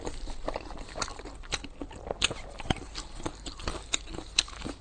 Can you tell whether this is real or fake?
real